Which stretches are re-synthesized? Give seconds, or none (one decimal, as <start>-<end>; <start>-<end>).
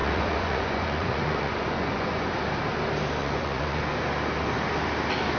0.0-2.3; 3.2-3.8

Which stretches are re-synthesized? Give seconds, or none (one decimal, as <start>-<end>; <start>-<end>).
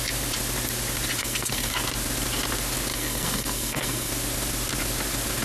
1.2-1.7; 2.9-4.1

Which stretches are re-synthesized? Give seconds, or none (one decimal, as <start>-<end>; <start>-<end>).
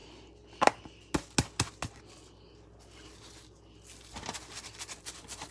none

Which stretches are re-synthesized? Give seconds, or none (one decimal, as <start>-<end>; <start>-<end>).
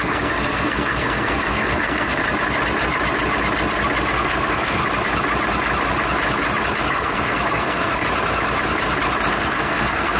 0.0-2.2; 4.1-4.8; 6.9-8.0; 9.3-10.2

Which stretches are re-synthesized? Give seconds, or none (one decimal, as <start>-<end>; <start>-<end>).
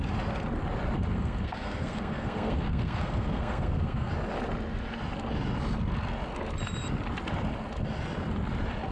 1.1-4.1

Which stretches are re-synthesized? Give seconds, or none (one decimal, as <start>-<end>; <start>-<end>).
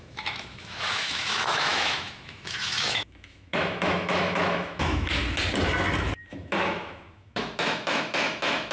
0.0-5.2; 6.3-8.7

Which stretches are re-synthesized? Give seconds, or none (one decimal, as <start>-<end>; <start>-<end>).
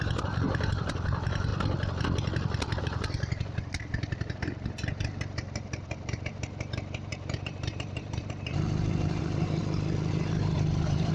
0.0-1.5; 2.8-9.6; 10.1-11.1